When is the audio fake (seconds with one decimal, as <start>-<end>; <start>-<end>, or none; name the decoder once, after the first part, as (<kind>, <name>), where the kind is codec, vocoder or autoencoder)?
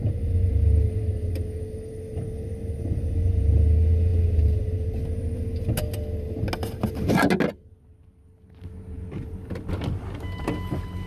none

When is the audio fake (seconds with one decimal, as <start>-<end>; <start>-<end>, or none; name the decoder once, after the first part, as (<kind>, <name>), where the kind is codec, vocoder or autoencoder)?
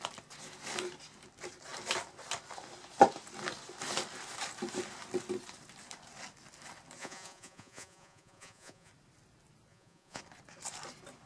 7.0-8.9 (vocoder, Vocos); 9.7-10.2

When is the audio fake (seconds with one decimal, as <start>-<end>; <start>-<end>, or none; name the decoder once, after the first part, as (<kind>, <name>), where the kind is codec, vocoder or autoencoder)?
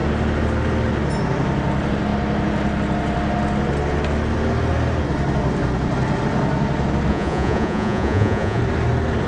7.1-8.6 (vocoder, Vocos)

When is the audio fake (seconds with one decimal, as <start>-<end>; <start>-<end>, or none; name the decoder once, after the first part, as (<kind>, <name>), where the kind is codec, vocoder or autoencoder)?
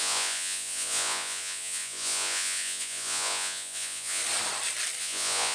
0.0-4.2 (vocoder, Vocos); 5.0-5.5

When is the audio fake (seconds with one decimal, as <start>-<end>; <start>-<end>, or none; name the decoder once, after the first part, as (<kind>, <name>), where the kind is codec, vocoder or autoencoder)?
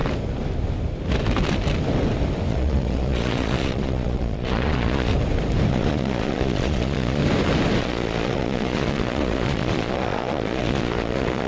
2.5-5.1 (vocoder, Vocos); 5.7-7.2; 7.8-11.5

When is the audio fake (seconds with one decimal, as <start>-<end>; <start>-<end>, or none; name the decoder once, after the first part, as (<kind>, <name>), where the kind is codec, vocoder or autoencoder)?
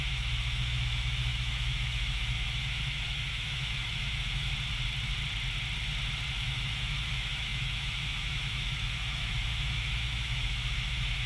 0.0-4.5 (autoencoder, DAC-VAE); 6.3-11.3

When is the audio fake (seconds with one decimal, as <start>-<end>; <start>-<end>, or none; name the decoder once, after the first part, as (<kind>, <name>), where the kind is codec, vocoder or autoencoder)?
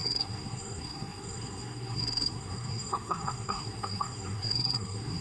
0.0-5.2 (codec, SNAC)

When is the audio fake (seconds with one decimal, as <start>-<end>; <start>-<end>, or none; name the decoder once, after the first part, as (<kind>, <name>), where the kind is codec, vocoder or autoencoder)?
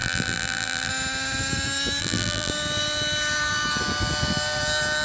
0.0-0.9 (vocoder, BigVGAN v2); 2.0-2.5